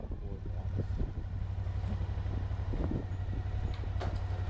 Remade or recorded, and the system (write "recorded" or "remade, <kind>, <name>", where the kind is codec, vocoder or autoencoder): recorded